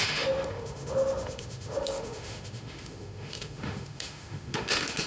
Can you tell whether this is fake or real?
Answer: fake